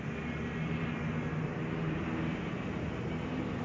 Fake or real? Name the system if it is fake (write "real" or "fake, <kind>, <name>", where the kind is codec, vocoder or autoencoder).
real